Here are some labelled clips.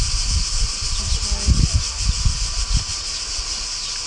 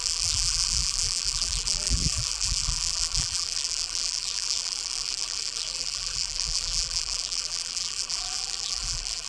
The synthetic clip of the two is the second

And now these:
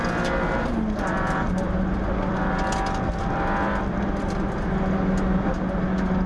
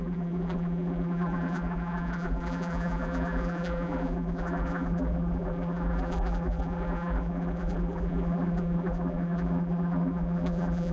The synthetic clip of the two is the second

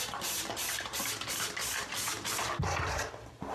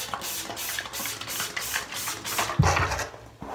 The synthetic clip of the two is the first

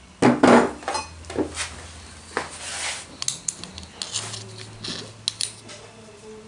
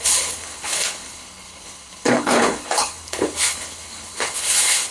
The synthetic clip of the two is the second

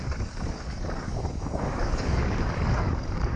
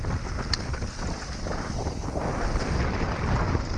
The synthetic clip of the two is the first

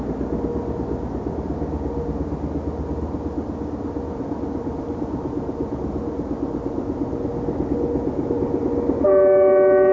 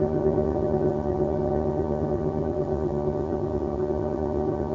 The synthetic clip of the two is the second